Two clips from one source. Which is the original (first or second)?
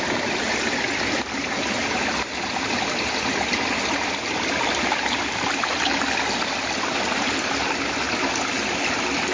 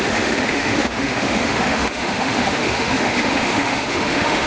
first